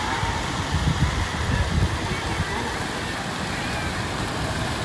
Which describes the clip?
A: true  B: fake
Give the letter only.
A